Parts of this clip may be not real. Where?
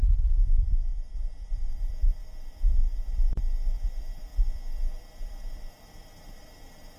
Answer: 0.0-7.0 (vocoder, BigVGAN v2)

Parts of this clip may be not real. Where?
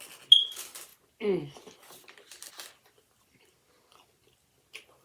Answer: none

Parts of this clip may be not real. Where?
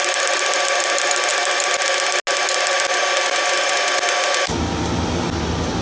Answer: none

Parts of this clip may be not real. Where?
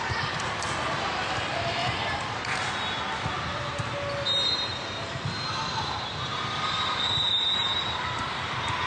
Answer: none